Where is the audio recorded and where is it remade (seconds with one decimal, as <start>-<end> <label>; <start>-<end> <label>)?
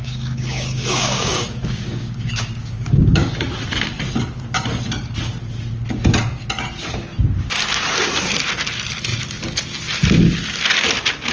0.0-3.3 remade; 3.3-11.3 recorded